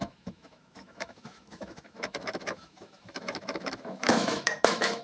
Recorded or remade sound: remade